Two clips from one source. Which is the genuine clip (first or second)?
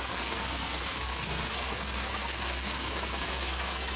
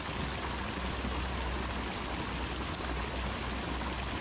second